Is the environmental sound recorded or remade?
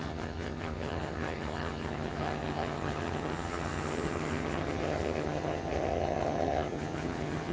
remade